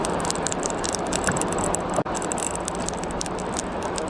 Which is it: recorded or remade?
recorded